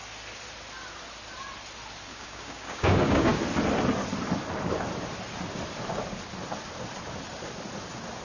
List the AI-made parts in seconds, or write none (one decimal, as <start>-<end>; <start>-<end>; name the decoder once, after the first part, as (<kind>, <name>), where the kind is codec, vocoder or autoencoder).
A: 2.1-3.4 (codec, DAC)